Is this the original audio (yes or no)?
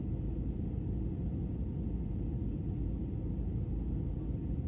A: yes